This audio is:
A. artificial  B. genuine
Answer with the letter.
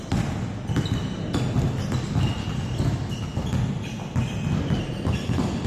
B